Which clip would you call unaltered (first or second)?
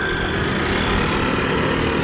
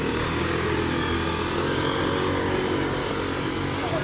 first